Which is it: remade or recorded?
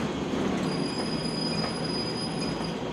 recorded